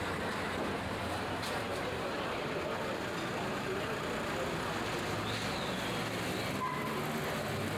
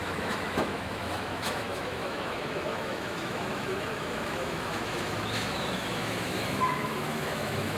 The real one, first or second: first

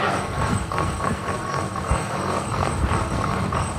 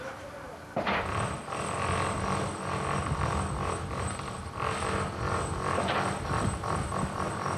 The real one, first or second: second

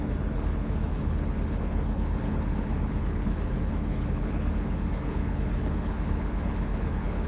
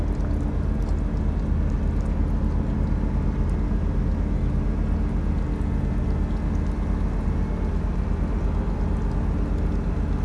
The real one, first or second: second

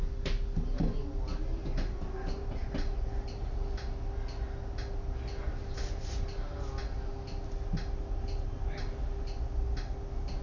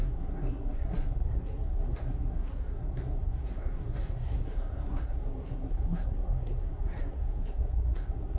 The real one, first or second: first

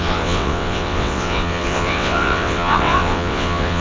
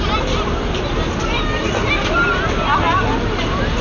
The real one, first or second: second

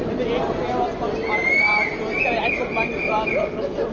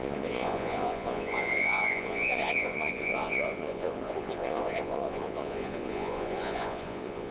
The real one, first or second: first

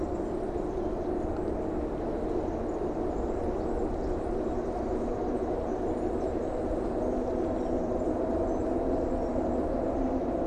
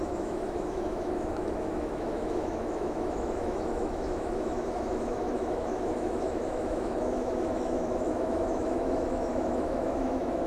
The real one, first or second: first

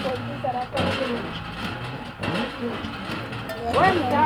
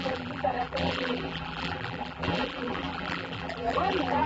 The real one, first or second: first